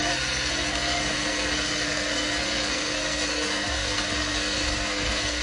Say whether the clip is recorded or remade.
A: remade